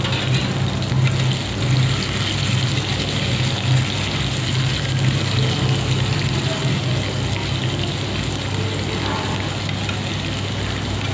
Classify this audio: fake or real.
real